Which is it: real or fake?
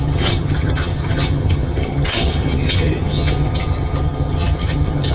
fake